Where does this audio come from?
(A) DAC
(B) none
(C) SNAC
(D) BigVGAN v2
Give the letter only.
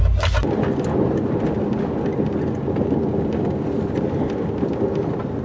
B